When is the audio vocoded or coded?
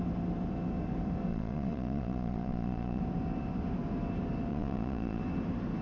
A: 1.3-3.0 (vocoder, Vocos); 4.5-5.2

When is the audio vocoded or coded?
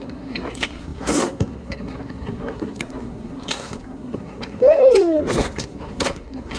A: 0.0-6.6 (codec, SNAC)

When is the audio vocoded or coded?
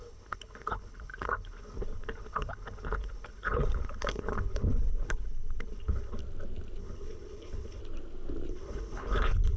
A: 0.0-6.2 (codec, HILCodec); 6.8-7.8; 8.5-9.6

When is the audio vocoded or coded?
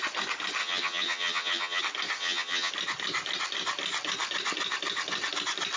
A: 0.6-1.8 (vocoder, HiFi-GAN); 2.2-2.7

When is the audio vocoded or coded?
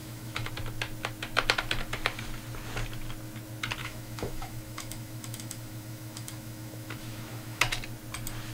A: 0.0-0.5 (autoencoder, DAC-VAE); 3.8-7.6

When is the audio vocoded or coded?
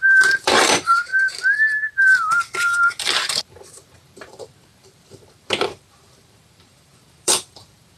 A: 0.0-1.1 (vocoder, BigVGAN v2); 3.3-8.0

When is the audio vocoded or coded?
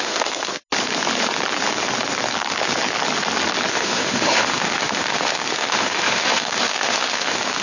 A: 0.0-0.5 (autoencoder, DAC-VAE); 3.7-7.6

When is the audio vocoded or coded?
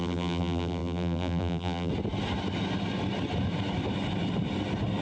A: 0.0-1.9 (vocoder, BigVGAN v2)